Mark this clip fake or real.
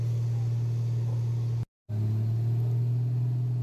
real